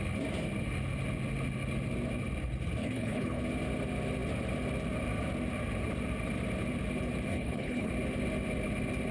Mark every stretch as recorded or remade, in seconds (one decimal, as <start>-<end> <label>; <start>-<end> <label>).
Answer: 0.0-2.8 recorded; 2.8-3.4 remade; 3.4-7.3 recorded; 7.3-7.9 remade; 7.9-9.1 recorded

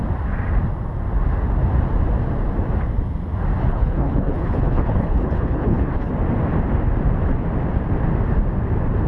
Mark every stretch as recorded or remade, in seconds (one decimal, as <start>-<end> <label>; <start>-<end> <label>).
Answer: 0.0-3.7 recorded; 3.7-6.1 remade; 6.1-9.1 recorded